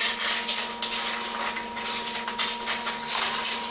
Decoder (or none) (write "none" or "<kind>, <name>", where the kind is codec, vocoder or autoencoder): none